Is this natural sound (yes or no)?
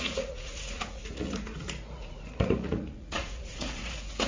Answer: no